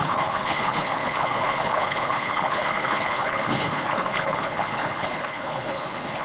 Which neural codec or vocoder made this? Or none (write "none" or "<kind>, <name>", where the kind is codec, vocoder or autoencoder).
codec, HILCodec